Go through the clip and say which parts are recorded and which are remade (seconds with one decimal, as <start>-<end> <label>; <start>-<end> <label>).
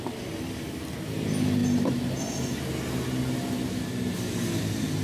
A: 0.0-5.0 recorded